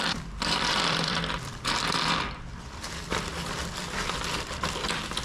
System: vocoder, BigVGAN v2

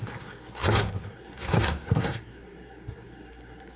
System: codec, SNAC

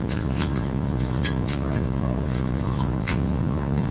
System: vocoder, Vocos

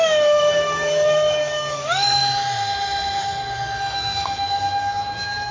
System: autoencoder, DAC-VAE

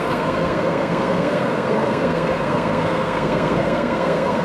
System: codec, SNAC